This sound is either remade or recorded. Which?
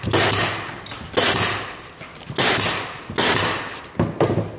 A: recorded